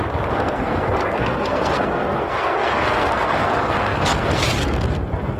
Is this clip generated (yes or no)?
yes